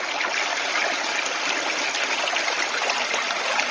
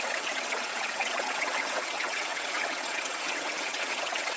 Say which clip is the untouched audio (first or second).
first